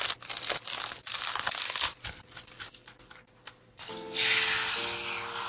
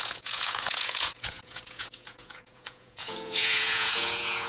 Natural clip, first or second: first